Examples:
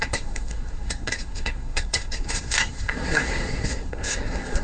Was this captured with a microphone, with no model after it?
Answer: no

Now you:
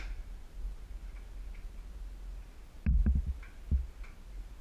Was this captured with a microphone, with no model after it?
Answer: yes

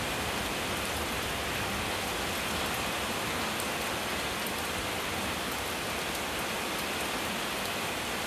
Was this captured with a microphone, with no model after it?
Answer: yes